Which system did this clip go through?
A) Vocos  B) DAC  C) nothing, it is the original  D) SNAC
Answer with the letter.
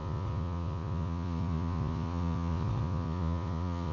A